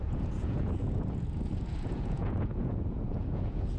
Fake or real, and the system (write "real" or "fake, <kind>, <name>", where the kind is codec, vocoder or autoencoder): fake, vocoder, Vocos